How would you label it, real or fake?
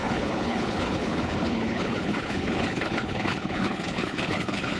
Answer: fake